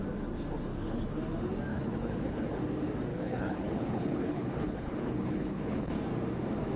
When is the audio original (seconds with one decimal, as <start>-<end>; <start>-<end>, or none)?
0.0-0.7; 1.2-1.7; 2.6-3.1; 5.9-6.8